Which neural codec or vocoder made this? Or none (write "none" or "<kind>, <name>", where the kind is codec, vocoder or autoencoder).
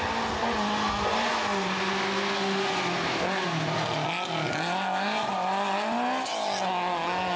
none